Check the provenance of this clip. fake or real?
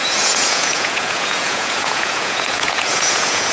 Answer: fake